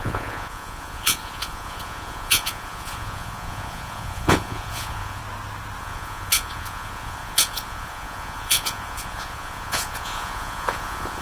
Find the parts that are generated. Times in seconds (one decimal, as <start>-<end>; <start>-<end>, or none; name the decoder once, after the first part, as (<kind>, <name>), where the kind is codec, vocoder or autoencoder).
0.0-5.2 (vocoder, Vocos); 5.8-11.2